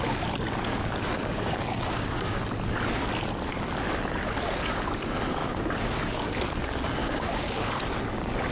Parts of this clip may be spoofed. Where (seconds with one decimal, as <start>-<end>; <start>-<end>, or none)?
0.7-2.4; 5.4-6.4; 7.0-7.8